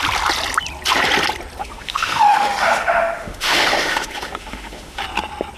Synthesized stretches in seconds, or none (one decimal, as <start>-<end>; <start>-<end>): 1.6-5.0